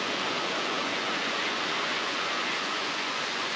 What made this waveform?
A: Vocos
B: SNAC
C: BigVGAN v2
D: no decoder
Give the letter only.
A